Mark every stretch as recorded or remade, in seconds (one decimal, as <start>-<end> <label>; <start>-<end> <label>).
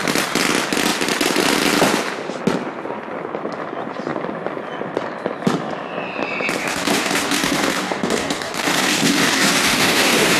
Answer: 0.0-6.6 recorded; 6.6-10.4 remade